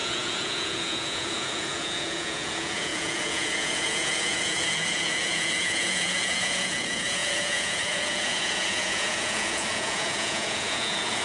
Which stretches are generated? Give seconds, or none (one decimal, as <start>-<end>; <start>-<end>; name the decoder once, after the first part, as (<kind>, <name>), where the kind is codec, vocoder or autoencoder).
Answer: 0.0-11.2 (vocoder, Vocos)